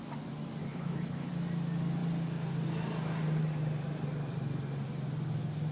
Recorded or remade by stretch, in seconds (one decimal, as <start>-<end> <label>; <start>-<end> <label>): 0.0-0.6 recorded; 0.6-1.3 remade; 1.3-5.7 recorded